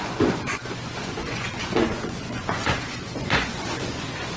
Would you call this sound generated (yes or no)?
yes